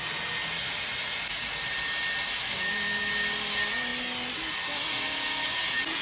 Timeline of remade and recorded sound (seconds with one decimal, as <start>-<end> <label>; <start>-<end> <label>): 0.0-2.4 recorded; 2.4-3.1 remade; 3.1-6.0 recorded